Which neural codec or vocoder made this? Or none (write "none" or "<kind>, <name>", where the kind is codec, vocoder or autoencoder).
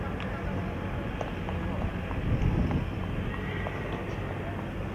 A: none